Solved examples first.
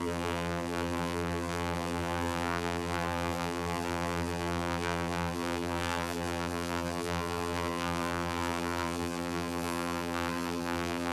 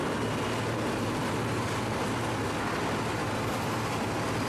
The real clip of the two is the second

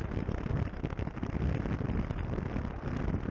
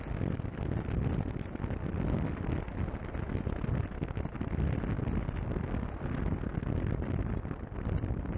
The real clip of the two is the second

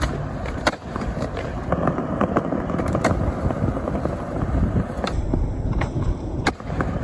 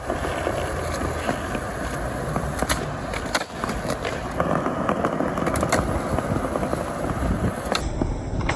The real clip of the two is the second